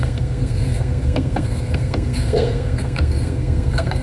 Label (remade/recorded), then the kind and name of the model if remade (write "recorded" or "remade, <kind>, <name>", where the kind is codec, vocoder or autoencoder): remade, codec, SNAC